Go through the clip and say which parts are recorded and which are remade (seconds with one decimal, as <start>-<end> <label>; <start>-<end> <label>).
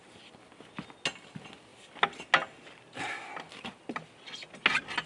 0.0-5.1 recorded